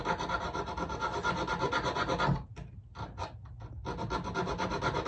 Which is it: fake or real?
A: real